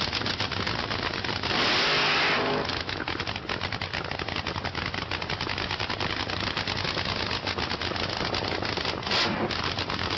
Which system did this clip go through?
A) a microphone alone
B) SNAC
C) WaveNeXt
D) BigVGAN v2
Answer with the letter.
A